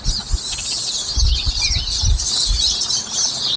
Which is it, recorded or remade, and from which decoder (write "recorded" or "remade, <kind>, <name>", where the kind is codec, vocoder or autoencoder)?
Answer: recorded